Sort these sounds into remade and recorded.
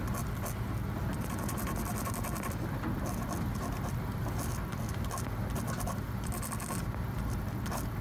recorded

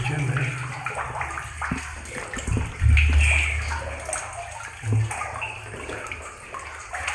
recorded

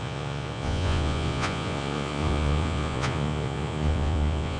remade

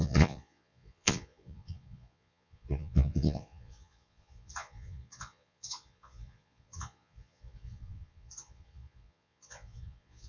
remade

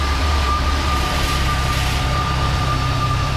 remade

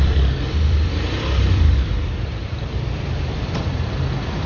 remade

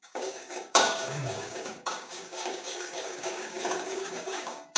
remade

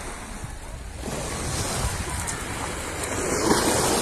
recorded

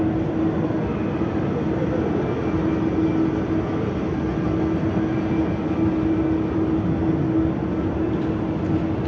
recorded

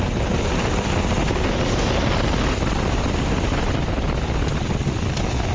recorded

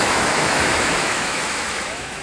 remade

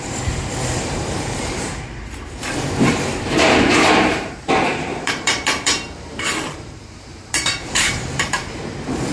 remade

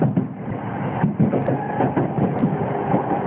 recorded